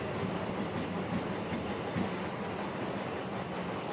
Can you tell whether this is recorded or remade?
recorded